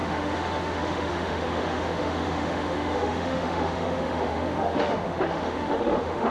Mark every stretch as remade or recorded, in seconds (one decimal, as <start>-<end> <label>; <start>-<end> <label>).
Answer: 0.0-6.3 remade